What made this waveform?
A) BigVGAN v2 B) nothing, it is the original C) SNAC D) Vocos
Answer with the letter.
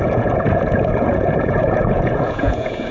D